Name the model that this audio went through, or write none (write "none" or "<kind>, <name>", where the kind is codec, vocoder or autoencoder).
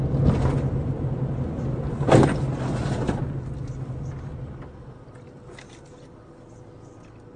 none